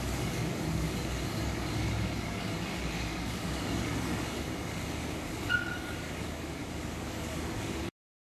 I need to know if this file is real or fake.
fake